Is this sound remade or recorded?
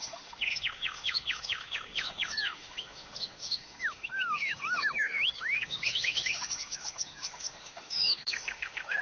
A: remade